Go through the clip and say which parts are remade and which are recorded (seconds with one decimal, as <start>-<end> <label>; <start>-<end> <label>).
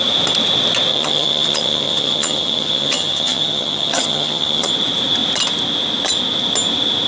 0.0-0.9 recorded; 0.9-4.7 remade; 4.7-7.1 recorded